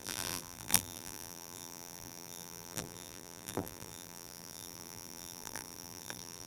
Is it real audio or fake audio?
fake